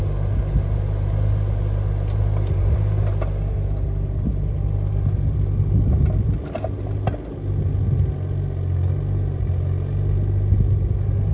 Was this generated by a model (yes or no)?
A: no